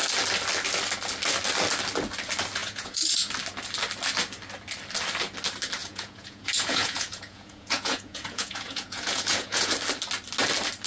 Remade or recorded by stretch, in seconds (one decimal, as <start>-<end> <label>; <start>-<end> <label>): 0.0-2.6 recorded; 2.6-3.3 remade; 3.3-5.8 recorded; 5.8-9.7 remade; 9.7-10.9 recorded